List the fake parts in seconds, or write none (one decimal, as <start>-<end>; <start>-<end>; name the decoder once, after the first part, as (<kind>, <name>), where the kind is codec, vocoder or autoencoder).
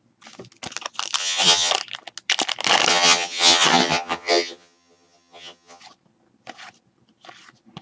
1.2-1.7 (vocoder, HiFi-GAN); 2.9-5.8